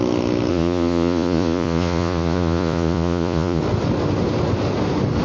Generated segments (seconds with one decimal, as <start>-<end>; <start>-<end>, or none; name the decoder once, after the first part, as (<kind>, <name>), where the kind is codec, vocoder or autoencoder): 0.5-3.6 (vocoder, Vocos)